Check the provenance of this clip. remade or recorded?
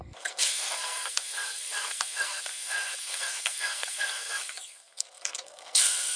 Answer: remade